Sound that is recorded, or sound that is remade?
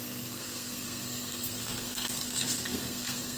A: remade